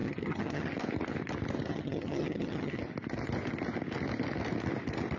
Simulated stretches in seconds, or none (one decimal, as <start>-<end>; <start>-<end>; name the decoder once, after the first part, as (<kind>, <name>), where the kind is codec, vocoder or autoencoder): 0.0-0.7 (vocoder, HiFi-GAN); 1.7-2.8